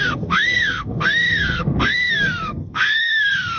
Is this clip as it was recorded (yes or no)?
no